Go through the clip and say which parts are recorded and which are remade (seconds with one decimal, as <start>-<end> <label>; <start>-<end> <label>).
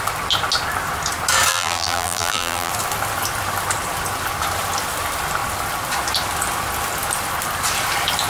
0.0-1.5 recorded; 1.5-2.7 remade; 2.7-8.3 recorded